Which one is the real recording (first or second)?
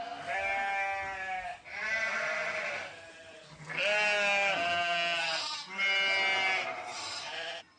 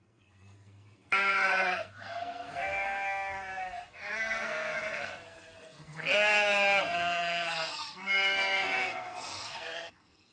first